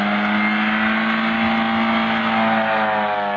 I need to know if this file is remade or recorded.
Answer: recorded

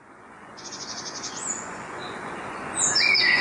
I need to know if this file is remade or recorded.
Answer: remade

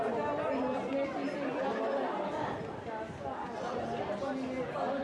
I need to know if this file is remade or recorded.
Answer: recorded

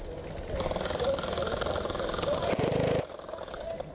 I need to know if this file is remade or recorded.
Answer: recorded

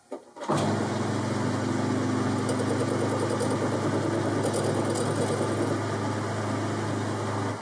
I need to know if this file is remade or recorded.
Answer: recorded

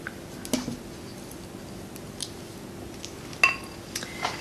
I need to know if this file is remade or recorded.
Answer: recorded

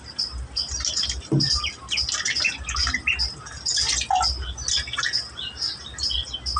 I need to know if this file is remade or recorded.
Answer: recorded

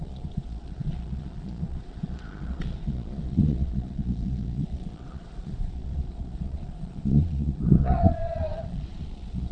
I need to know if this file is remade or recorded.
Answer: remade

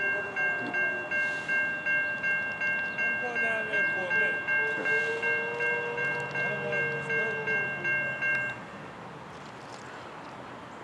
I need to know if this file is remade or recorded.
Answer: recorded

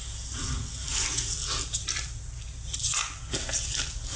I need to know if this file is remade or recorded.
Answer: recorded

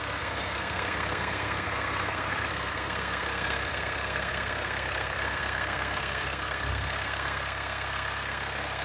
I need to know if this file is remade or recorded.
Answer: remade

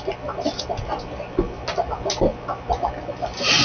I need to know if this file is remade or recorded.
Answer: recorded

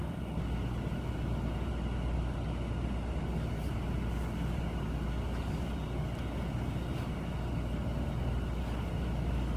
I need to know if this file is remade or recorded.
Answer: recorded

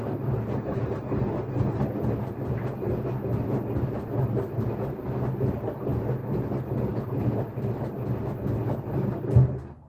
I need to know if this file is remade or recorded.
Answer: recorded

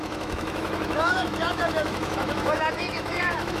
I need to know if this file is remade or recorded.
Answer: remade